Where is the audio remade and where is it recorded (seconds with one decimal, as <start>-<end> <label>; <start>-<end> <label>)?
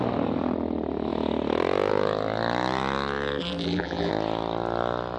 0.0-3.4 recorded; 3.4-4.1 remade; 4.1-5.2 recorded